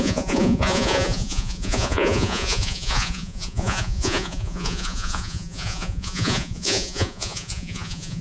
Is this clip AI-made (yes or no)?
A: yes